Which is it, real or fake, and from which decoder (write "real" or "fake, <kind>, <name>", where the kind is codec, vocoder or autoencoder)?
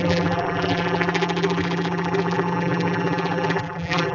fake, vocoder, BigVGAN v2